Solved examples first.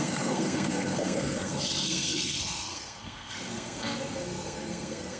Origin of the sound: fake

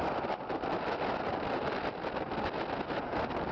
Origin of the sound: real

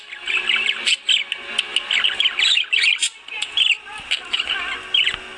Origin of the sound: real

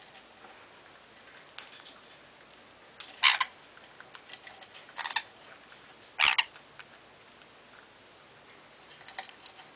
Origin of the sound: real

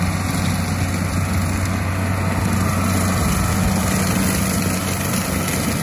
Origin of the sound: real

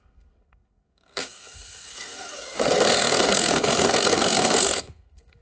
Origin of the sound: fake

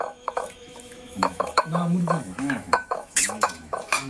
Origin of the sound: fake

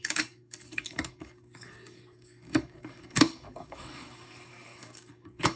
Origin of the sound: fake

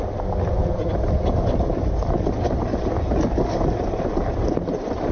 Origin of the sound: real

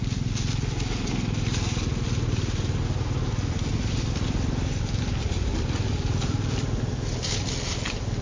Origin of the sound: real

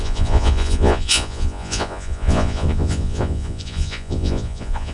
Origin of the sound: fake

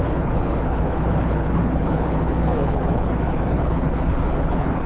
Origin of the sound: fake